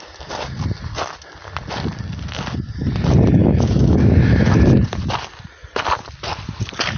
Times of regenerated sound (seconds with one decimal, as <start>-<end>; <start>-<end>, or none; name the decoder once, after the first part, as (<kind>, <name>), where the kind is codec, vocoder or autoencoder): 3.4-4.4 (autoencoder, DAC-VAE)